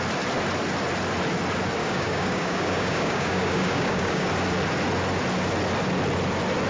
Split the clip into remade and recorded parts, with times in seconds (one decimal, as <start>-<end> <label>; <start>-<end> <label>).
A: 0.0-1.8 recorded; 1.8-4.3 remade; 4.3-6.7 recorded